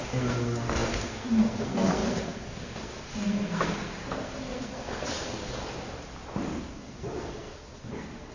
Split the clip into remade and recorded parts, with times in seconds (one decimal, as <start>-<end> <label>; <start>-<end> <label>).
0.0-5.6 remade; 5.6-6.6 recorded; 6.6-8.3 remade